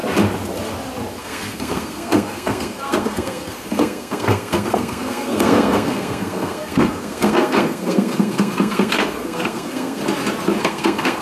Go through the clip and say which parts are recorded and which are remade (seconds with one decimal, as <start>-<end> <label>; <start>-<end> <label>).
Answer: 0.0-1.2 recorded; 1.2-10.0 remade; 10.0-10.6 recorded; 10.6-11.2 remade